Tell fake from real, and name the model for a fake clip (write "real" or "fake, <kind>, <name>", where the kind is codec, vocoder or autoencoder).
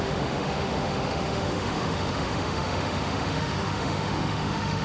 fake, autoencoder, DAC-VAE